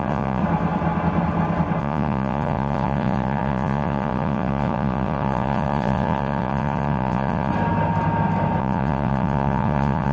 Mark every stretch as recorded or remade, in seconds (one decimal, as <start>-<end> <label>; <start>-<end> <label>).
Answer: 0.0-0.4 remade; 0.4-1.8 recorded; 1.8-7.5 remade; 7.5-8.6 recorded; 8.6-10.1 remade